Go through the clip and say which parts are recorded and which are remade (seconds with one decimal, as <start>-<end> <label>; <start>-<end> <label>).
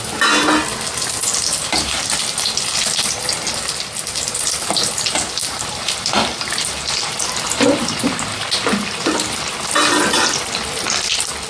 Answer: 0.0-1.2 recorded; 1.2-2.0 remade; 2.0-5.4 recorded; 5.4-9.5 remade; 9.5-11.5 recorded